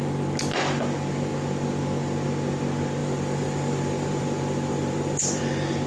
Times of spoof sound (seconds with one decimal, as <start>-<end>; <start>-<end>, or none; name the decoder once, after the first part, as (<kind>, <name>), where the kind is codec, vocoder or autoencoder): 3.0-5.4 (vocoder, BigVGAN v2)